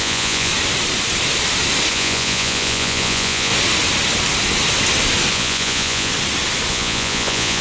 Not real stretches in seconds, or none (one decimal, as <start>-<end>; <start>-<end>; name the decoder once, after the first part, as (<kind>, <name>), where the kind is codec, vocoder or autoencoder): 0.0-0.5 (vocoder, Vocos); 1.9-3.5; 5.3-6.1; 6.7-7.6